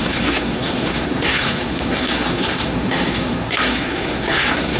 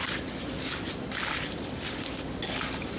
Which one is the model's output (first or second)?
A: first